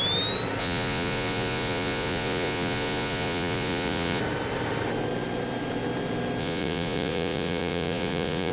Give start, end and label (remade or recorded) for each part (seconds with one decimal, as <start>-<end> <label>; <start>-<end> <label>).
0.0-0.6 recorded; 0.6-4.2 remade; 4.2-6.4 recorded; 6.4-8.5 remade